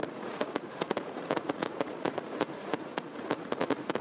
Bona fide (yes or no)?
no